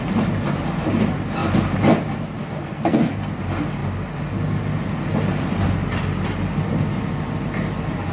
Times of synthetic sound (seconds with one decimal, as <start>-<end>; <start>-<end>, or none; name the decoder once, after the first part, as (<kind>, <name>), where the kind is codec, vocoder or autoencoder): 2.4-3.3 (codec, SNAC)